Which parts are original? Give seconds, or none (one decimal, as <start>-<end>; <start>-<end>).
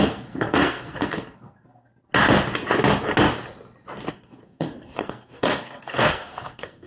1.9-4.1